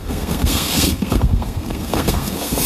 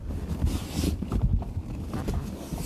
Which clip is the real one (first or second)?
second